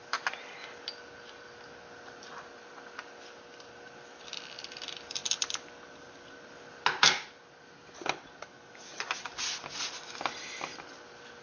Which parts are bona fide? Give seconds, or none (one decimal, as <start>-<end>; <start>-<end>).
0.0-11.4